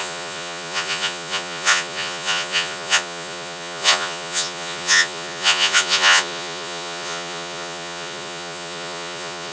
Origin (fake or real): fake